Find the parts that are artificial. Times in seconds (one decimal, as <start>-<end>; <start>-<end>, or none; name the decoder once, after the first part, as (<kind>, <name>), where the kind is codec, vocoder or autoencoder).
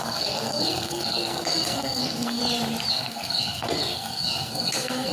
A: 0.0-2.4 (codec, SNAC); 2.9-5.1